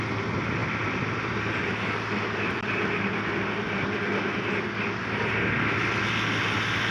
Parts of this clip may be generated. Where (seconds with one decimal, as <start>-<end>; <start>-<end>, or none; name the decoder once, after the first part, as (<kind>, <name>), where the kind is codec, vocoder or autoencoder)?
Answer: 0.6-4.4 (vocoder, BigVGAN v2)